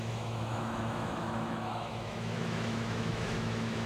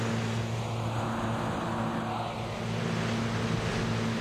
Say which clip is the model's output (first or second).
first